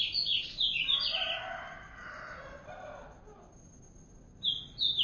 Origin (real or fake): real